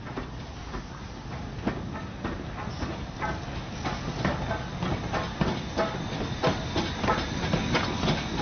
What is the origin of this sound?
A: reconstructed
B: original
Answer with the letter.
B